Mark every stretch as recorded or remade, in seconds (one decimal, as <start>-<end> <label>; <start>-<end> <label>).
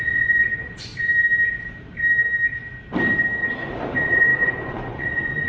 0.0-0.9 remade; 0.9-3.6 recorded; 3.6-5.5 remade